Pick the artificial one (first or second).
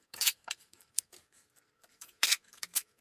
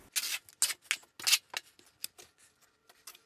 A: first